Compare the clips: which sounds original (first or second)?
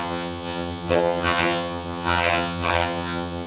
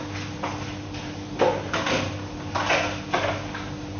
second